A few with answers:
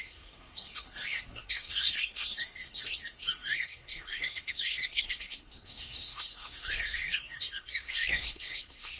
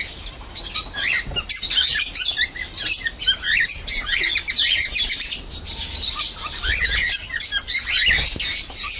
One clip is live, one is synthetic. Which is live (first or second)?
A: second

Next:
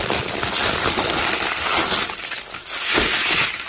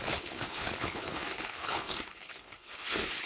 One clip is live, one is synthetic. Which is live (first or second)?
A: first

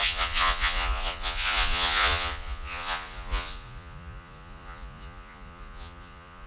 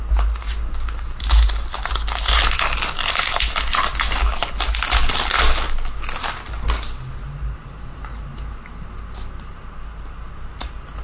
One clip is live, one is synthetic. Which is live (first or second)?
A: second